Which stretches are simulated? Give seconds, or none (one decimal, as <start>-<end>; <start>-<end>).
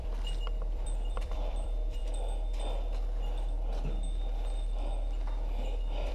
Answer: 0.0-2.0